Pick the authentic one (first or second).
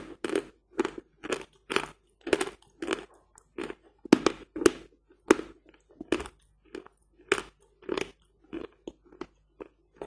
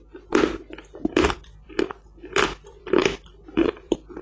first